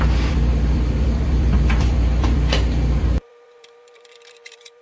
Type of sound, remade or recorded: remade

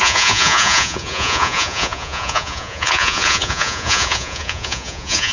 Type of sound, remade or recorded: remade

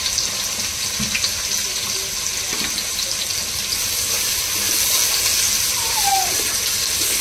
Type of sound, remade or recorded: recorded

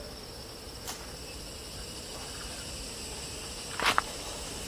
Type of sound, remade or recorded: recorded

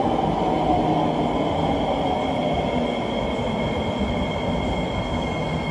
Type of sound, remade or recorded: recorded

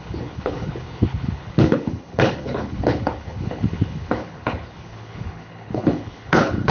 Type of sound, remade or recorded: remade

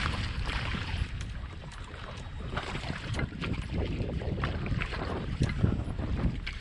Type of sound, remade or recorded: remade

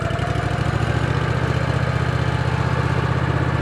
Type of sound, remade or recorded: recorded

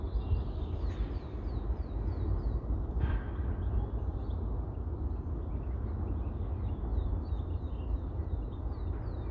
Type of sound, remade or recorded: recorded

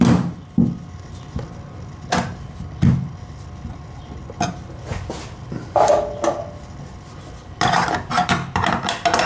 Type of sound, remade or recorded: recorded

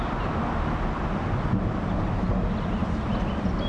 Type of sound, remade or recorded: recorded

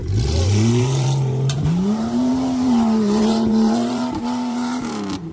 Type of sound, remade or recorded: remade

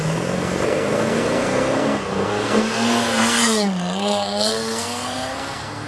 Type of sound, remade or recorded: remade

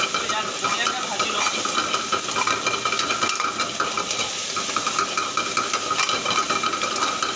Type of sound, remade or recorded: recorded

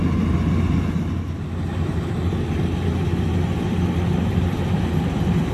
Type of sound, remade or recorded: recorded